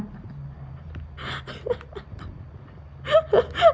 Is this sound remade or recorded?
recorded